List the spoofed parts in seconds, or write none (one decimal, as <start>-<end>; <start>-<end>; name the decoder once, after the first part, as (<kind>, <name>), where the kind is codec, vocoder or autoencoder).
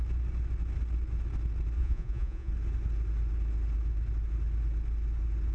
1.8-2.5 (vocoder, Vocos)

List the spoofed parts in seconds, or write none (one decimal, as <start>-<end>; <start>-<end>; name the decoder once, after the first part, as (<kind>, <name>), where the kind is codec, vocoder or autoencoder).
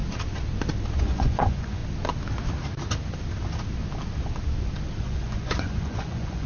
1.0-1.8 (vocoder, Vocos); 5.0-6.5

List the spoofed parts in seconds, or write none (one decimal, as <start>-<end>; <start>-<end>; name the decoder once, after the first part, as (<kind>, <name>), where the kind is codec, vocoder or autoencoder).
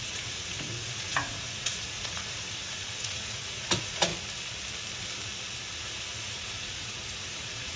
0.0-4.1 (vocoder, Vocos); 5.8-7.8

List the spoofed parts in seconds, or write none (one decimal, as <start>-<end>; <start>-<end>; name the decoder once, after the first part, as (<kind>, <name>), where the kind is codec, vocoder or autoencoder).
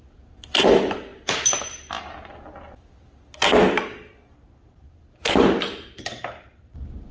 none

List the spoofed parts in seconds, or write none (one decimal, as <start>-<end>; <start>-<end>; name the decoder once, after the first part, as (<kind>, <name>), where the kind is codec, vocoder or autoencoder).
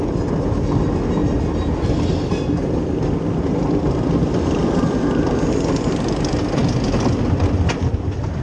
none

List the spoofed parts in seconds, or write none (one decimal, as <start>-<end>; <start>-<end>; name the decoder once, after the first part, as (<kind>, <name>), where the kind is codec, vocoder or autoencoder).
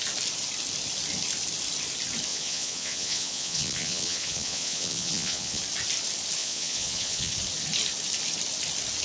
2.3-5.6 (vocoder, Vocos); 6.4-7.3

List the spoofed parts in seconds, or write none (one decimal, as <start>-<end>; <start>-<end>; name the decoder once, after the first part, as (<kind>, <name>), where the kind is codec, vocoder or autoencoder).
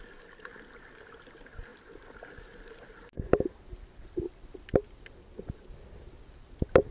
none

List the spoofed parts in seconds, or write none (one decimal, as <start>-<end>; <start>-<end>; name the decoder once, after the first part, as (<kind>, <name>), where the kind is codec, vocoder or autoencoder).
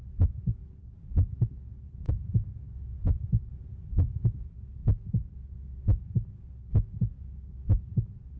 2.0-4.5 (vocoder, Vocos)